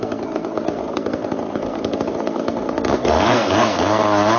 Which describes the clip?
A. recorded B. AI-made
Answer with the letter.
B